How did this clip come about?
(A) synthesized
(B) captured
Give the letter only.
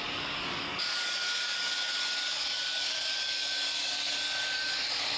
A